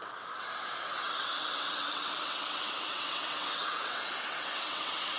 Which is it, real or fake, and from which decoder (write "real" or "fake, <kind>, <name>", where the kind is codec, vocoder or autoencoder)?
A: fake, vocoder, WaveNeXt